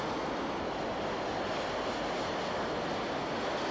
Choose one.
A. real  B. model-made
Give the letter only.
A